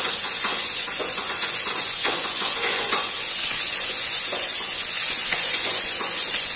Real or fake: fake